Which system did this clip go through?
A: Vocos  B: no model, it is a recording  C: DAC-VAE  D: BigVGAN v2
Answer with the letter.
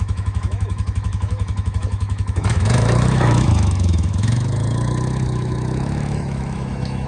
C